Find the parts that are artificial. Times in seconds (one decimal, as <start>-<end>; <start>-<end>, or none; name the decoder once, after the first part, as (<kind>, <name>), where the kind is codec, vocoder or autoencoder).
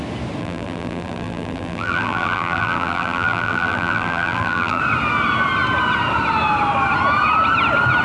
0.4-4.8 (vocoder, BigVGAN v2)